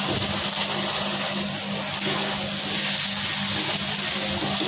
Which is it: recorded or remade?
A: recorded